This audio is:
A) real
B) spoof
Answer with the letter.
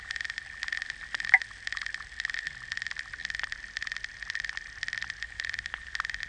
A